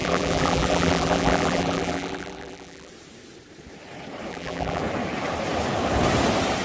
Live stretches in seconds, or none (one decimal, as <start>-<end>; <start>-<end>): 2.9-4.3; 4.8-6.6